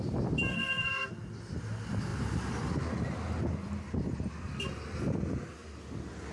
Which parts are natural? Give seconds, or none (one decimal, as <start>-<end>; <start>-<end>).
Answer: 0.0-0.5; 1.1-6.3